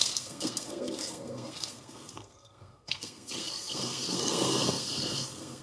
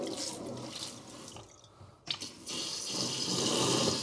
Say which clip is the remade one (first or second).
first